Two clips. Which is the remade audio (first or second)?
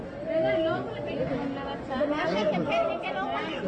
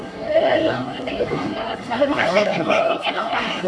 second